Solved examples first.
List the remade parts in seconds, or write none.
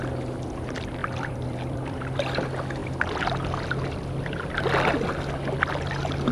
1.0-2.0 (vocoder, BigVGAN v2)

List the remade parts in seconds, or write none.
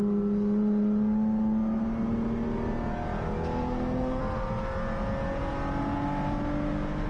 3.6-4.2 (codec, SNAC)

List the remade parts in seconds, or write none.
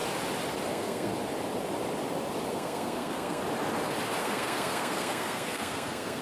0.7-1.1 (codec, SNAC); 2.5-3.4; 4.2-6.2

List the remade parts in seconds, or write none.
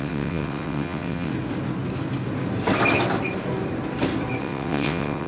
0.0-1.3 (vocoder, WaveNeXt); 4.4-5.3